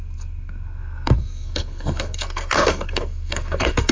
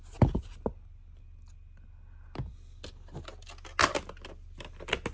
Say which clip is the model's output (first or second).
first